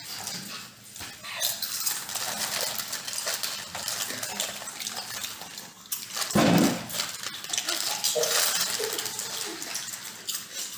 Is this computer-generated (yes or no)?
no